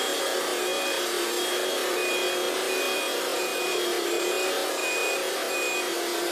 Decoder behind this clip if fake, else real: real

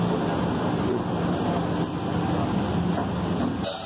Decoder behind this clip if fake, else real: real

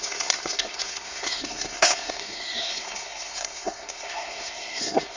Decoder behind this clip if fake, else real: fake, codec, SNAC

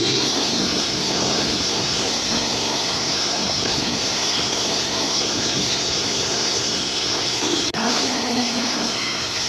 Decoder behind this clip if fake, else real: fake, codec, SNAC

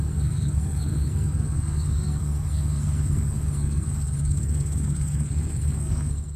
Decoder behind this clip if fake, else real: fake, codec, SNAC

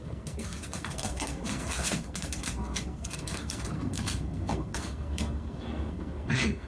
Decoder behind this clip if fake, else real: fake, codec, SNAC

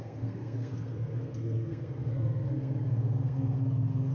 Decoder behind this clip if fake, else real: fake, codec, SNAC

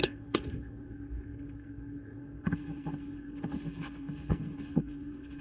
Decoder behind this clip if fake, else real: fake, codec, SNAC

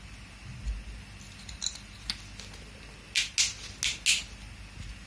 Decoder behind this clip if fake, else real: real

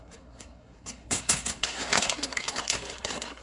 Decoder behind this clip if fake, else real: fake, codec, SNAC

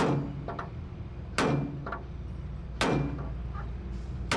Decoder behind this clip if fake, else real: real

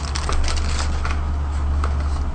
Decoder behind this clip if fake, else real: real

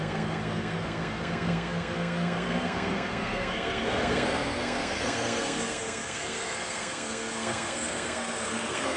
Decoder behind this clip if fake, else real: fake, codec, SNAC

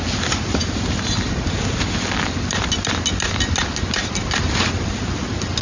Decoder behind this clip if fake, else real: real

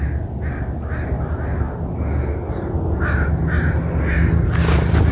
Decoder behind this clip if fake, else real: real